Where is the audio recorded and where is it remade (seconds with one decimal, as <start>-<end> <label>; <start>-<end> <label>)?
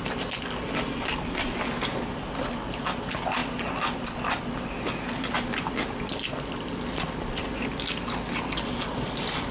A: 0.0-9.5 recorded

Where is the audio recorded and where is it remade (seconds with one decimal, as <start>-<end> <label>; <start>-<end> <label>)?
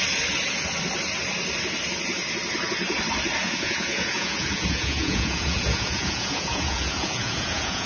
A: 0.0-3.4 recorded; 3.4-7.9 remade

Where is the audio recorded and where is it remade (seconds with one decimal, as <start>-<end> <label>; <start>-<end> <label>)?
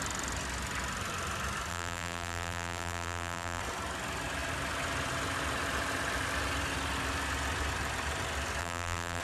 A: 0.0-1.7 recorded; 1.7-3.6 remade; 3.6-8.6 recorded; 8.6-9.2 remade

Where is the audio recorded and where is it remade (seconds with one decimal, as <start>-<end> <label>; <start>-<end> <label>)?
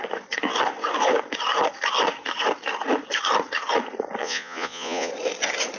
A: 0.0-4.2 recorded; 4.2-5.1 remade; 5.1-5.8 recorded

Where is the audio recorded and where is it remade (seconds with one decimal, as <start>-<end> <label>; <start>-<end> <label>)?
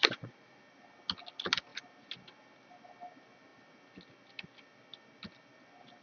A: 0.0-0.6 remade; 0.6-6.0 recorded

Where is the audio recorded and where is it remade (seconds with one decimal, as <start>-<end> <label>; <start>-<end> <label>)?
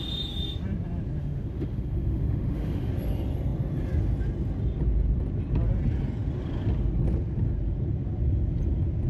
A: 0.0-1.2 recorded; 1.2-2.9 remade; 2.9-9.1 recorded